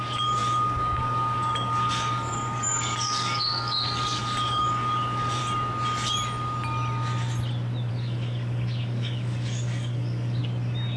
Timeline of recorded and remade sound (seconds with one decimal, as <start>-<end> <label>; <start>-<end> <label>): 0.0-5.4 remade; 5.4-7.9 recorded; 7.9-10.4 remade; 10.4-11.0 recorded

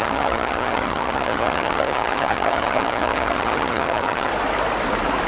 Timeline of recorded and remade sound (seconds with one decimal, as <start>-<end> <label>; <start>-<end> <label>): 0.0-4.3 remade; 4.3-5.3 recorded